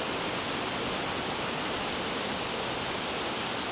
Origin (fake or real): real